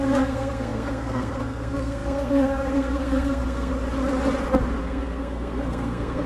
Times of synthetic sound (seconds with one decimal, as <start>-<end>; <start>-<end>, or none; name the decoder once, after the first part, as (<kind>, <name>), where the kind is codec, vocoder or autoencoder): 0.0-3.7 (codec, SNAC); 4.8-6.3